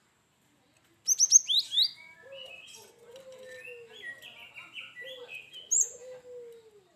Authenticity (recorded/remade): recorded